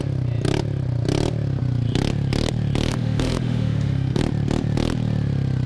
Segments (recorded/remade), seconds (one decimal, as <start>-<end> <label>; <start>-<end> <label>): 0.0-2.9 recorded; 2.9-4.2 remade; 4.2-5.7 recorded